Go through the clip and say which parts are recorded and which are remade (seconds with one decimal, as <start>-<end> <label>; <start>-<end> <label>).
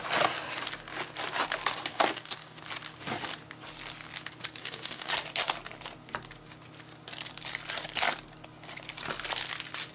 0.0-1.9 recorded; 1.9-2.6 remade; 2.6-4.6 recorded; 4.6-5.1 remade; 5.1-9.9 recorded